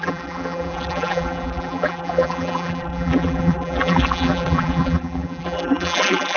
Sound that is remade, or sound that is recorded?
remade